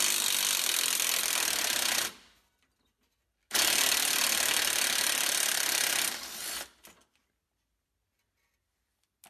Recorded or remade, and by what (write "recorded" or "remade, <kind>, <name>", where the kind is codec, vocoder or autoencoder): recorded